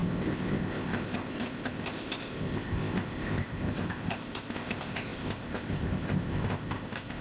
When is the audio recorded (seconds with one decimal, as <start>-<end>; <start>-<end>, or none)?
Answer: none